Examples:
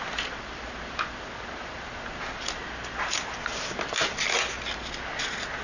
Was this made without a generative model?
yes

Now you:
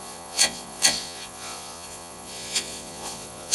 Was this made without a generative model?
no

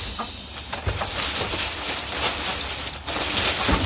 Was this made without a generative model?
yes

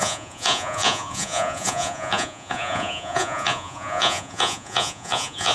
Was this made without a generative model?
no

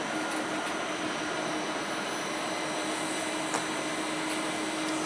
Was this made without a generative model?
yes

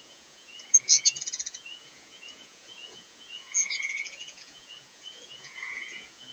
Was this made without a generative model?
no